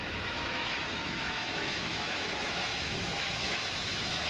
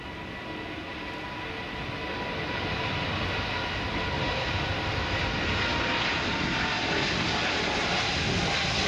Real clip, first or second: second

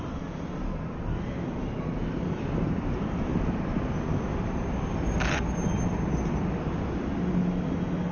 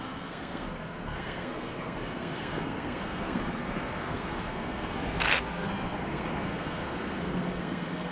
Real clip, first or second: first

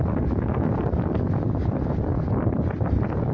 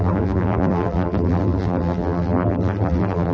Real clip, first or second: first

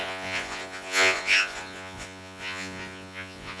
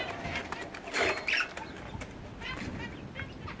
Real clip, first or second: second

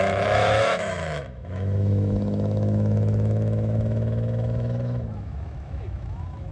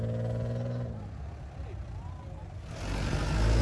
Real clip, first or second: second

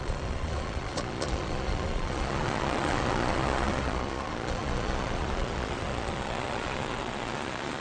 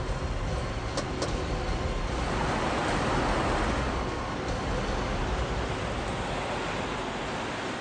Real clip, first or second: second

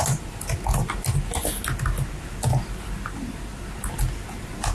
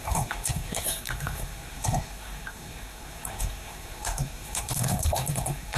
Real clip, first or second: first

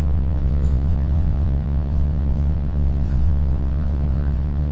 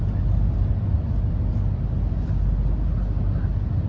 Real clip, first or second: second